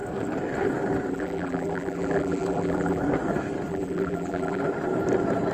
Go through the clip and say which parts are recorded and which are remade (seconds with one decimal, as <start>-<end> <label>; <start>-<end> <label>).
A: 0.0-1.1 recorded; 1.1-3.0 remade; 3.0-3.7 recorded; 3.7-4.6 remade; 4.6-5.5 recorded